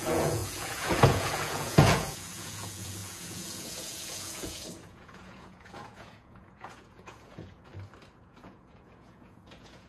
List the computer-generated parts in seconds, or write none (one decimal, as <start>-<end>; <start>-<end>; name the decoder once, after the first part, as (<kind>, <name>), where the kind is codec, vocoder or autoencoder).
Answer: 0.0-7.7 (vocoder, Vocos); 8.2-9.9

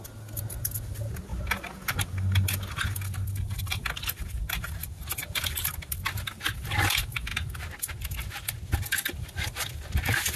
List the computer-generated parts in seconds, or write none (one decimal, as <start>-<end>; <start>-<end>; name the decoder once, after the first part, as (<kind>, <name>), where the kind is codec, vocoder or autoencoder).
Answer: none

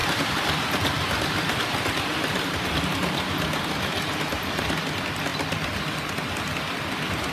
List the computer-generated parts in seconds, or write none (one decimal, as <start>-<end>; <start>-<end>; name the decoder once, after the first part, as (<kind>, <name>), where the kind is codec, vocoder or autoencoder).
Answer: 0.0-4.4 (vocoder, BigVGAN v2)

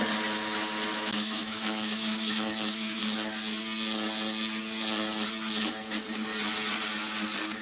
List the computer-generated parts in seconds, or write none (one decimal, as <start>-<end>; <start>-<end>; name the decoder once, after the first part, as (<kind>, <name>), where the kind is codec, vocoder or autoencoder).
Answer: 0.9-3.0 (autoencoder, DAC-VAE)

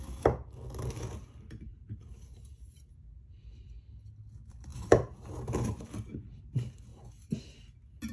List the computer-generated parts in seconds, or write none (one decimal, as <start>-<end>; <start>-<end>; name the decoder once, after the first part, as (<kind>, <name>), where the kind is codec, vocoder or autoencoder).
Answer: 1.7-2.9 (vocoder, BigVGAN v2); 4.7-6.1

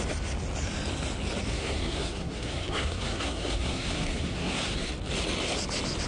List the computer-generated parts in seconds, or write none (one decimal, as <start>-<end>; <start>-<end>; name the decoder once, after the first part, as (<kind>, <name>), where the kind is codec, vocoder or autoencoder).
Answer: 1.5-4.9 (codec, SNAC)

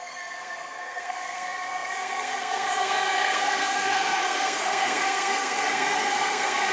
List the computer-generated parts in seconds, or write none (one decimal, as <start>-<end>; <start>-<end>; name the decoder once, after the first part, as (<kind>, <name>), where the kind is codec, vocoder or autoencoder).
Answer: 0.0-6.7 (codec, SNAC)